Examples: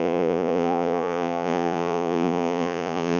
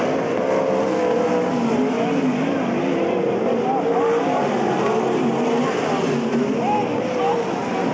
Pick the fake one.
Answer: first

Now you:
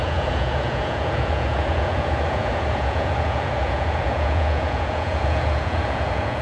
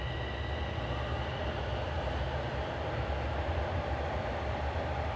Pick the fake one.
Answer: first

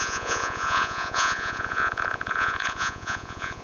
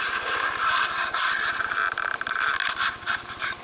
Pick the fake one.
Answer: first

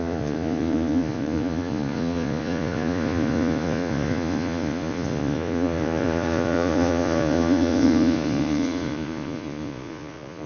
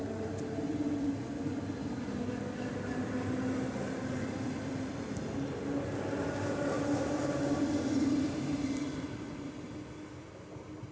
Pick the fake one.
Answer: first